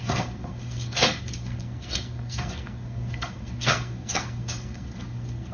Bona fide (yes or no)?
no